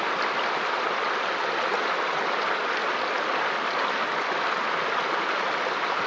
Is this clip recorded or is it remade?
recorded